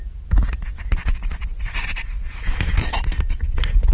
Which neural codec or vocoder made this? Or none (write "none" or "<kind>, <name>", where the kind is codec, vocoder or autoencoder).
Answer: none